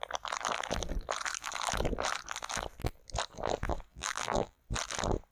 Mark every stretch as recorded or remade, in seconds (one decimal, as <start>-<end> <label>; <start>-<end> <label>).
0.0-3.9 recorded; 3.9-4.6 remade; 4.6-5.3 recorded